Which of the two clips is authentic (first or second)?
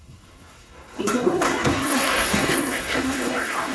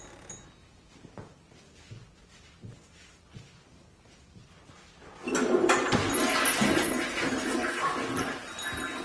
second